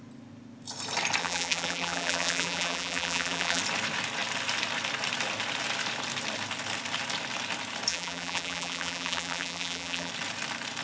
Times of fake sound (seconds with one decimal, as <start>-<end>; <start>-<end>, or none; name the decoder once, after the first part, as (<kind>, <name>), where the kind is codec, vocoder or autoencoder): 1.2-3.6 (vocoder, BigVGAN v2); 7.9-10.1